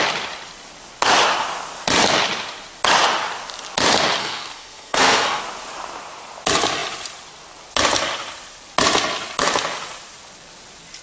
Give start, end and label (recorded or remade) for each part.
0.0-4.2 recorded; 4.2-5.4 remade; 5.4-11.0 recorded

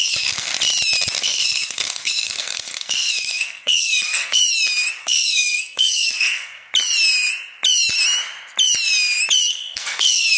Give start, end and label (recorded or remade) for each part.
0.0-0.5 remade; 0.5-1.2 recorded; 1.2-4.4 remade; 4.4-5.0 recorded; 5.0-6.7 remade; 6.7-9.5 recorded; 9.5-10.4 remade

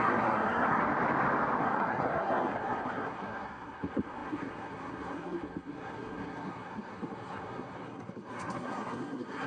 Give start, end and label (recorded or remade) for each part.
0.0-0.8 remade; 0.8-1.6 recorded; 1.6-9.5 remade